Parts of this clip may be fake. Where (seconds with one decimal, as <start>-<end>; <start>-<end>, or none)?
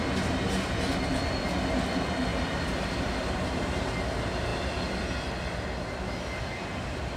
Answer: none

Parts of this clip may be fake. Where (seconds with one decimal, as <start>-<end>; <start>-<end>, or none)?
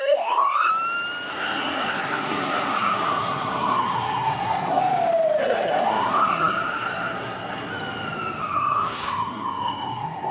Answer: 0.0-0.7; 1.3-4.8; 5.4-7.7; 8.4-10.3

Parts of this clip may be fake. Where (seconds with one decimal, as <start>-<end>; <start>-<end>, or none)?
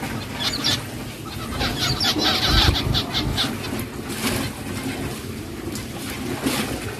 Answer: none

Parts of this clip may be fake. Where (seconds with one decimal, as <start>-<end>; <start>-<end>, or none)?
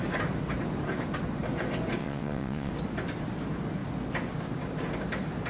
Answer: 2.0-2.7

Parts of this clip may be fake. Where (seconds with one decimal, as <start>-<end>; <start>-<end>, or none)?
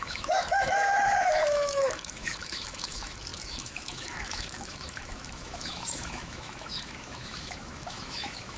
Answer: 0.0-8.6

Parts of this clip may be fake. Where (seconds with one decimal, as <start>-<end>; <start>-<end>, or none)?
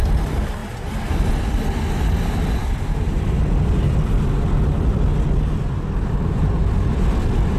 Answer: none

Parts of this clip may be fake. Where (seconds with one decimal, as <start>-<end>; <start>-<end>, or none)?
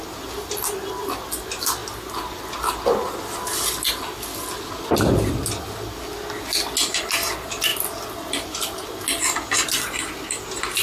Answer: none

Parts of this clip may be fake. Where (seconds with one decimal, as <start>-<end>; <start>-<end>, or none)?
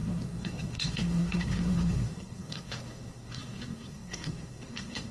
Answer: 0.0-5.1